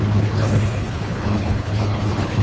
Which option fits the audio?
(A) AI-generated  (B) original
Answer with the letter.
A